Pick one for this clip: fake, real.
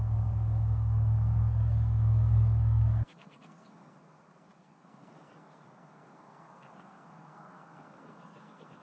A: fake